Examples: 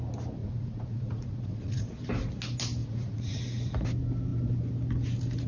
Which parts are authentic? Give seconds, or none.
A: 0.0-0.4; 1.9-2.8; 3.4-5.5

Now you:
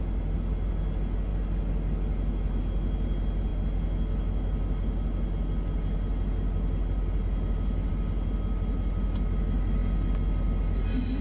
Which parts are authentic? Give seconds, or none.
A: 0.0-11.2

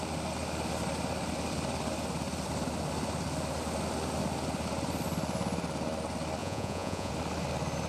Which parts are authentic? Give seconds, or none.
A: 0.0-6.4; 7.1-7.9

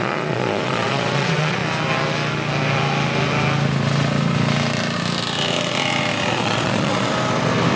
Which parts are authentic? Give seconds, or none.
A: 1.6-6.3; 7.1-7.8